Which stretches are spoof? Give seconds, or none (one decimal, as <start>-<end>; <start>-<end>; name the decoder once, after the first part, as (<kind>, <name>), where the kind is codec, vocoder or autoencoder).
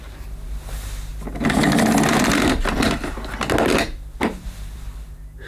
0.0-1.1 (vocoder, BigVGAN v2); 4.4-5.5